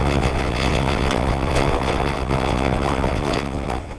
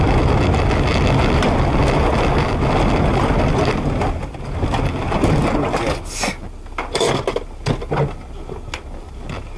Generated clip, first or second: first